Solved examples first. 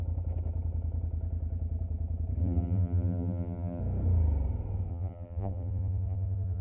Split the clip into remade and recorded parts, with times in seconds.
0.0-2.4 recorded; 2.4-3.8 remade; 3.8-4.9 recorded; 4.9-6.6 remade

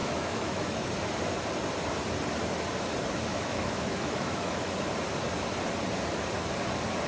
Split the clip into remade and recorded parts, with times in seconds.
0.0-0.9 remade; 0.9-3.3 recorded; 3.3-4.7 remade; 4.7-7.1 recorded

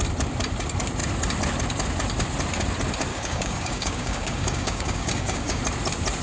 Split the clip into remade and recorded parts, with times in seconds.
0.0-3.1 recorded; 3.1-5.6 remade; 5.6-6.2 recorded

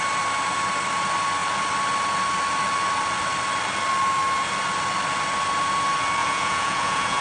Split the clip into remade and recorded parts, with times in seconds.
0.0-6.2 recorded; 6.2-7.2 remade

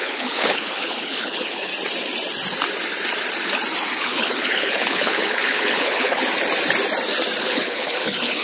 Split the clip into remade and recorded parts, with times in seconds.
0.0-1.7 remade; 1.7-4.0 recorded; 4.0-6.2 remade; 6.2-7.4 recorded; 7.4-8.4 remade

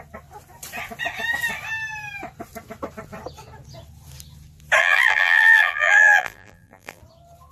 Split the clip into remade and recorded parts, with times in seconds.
0.0-4.8 recorded; 4.8-7.0 remade; 7.0-7.5 recorded

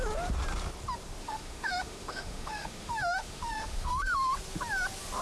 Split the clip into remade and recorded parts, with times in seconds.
0.0-1.2 recorded; 1.2-4.3 remade; 4.3-5.2 recorded

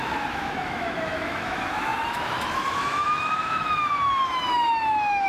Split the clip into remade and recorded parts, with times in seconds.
0.0-5.3 remade